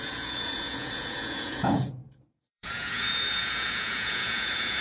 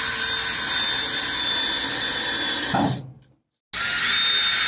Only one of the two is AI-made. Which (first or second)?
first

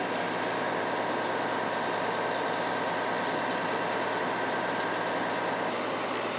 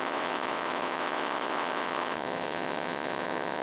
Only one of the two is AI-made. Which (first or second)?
second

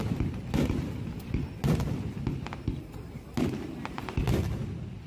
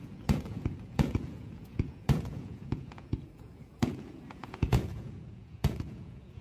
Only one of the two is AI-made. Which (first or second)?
second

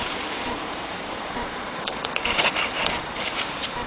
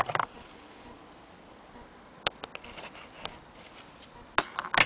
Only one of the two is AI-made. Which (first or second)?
first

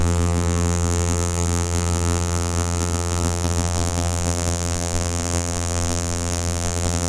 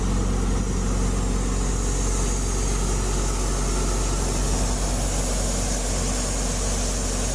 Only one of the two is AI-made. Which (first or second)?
first